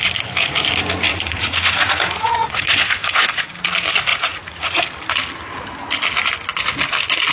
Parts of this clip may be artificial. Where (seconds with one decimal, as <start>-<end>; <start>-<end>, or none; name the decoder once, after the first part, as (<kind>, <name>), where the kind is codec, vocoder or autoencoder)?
1.1-3.5 (vocoder, Vocos); 4.1-4.8